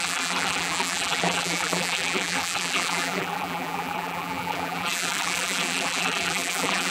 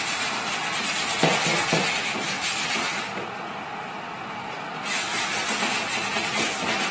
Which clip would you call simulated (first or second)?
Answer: first